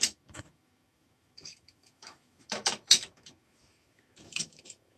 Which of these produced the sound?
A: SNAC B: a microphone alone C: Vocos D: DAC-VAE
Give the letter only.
D